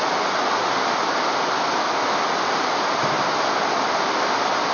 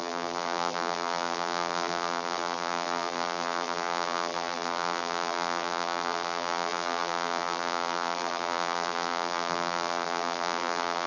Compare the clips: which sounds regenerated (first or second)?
second